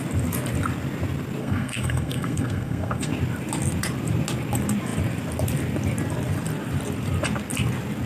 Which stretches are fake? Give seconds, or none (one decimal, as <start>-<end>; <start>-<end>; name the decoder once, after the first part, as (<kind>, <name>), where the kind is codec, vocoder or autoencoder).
1.4-3.1 (codec, SNAC)